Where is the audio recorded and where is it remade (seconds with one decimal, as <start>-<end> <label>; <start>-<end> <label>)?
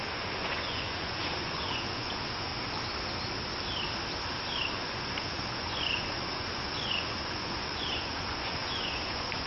0.0-2.5 remade; 2.5-4.7 recorded; 4.7-9.5 remade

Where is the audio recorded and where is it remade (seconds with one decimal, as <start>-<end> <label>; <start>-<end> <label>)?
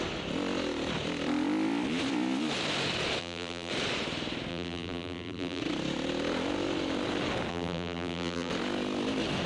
0.0-3.2 recorded; 3.2-3.7 remade; 3.7-4.5 recorded; 4.5-5.6 remade; 5.6-7.5 recorded; 7.5-8.5 remade; 8.5-9.5 recorded